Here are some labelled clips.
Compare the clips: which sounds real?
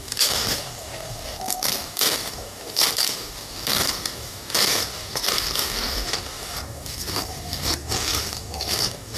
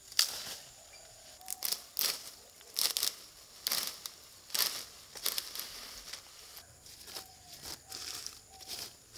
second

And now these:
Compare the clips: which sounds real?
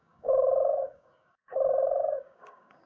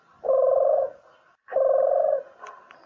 second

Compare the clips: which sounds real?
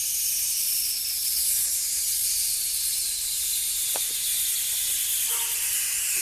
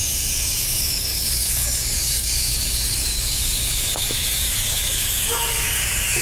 first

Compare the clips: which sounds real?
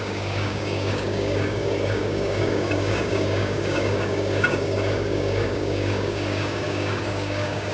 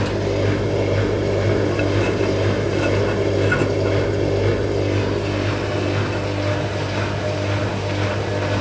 second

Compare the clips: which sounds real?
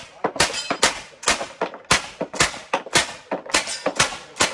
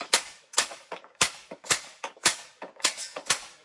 first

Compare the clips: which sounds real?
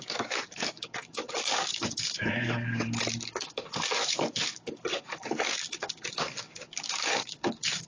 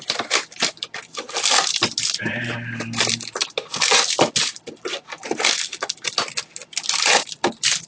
second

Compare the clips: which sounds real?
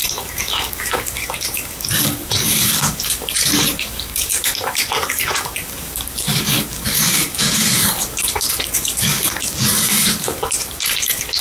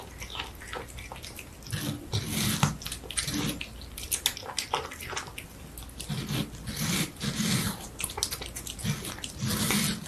second